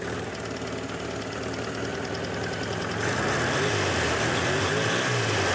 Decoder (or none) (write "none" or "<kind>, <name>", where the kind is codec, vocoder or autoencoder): none